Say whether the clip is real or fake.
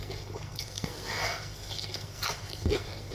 fake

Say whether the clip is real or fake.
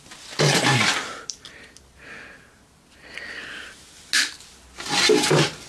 real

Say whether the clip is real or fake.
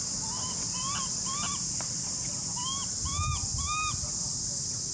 real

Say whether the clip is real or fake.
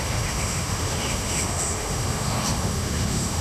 fake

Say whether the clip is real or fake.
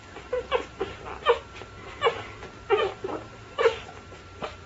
real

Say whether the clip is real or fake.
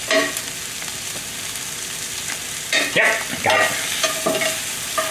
real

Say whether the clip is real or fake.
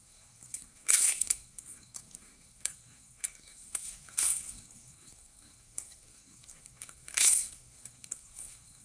fake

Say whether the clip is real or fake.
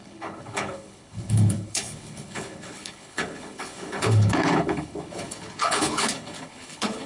fake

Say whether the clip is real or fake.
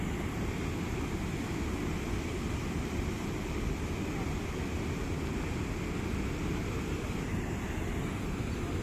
real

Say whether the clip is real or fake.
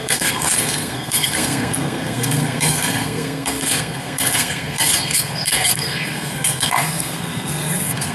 fake